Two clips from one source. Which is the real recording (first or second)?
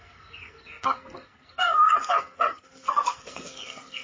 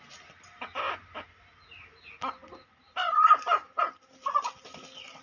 second